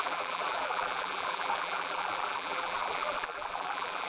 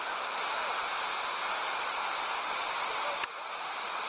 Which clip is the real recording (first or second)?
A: second